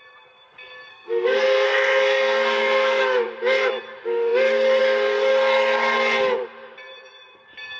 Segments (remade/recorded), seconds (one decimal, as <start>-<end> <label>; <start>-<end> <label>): 0.0-0.9 recorded; 0.9-3.0 remade; 3.0-7.8 recorded